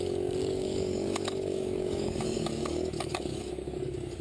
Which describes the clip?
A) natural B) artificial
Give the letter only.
B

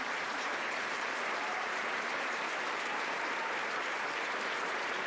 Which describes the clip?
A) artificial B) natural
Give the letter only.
A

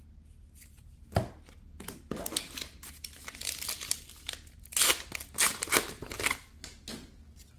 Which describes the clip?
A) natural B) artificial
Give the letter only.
A